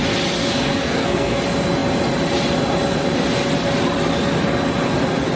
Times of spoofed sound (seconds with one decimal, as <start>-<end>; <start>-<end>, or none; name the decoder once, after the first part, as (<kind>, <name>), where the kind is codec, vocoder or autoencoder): 0.4-1.4 (codec, SNAC)